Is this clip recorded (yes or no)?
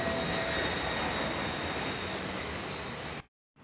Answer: yes